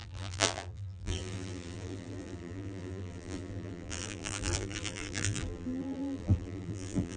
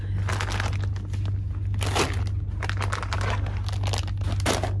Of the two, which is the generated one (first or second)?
first